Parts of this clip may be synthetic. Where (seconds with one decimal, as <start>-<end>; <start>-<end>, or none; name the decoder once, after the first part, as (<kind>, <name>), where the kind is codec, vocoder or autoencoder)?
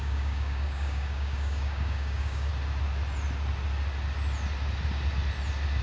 0.0-2.5 (codec, DAC)